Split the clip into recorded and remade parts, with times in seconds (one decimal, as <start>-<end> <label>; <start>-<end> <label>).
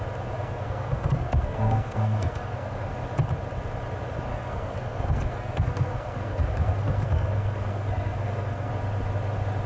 0.0-0.4 recorded; 0.4-2.9 remade; 2.9-4.3 recorded; 4.3-8.7 remade; 8.7-9.7 recorded